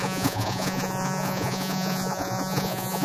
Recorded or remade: remade